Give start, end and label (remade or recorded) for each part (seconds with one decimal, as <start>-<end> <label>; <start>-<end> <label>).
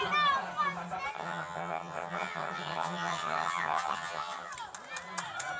0.0-1.1 recorded; 1.1-4.5 remade; 4.5-5.6 recorded